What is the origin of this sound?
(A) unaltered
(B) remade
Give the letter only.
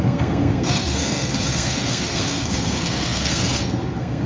B